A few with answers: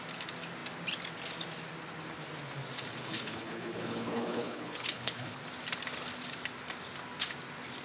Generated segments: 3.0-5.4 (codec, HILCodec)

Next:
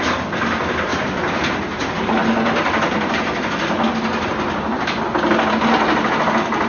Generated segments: none

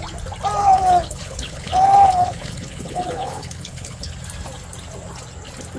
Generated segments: 0.6-4.1 (codec, HILCodec)

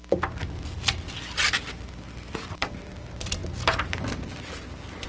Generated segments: none